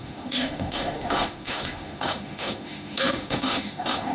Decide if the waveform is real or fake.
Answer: fake